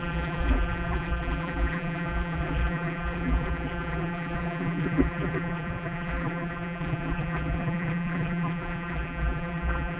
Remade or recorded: remade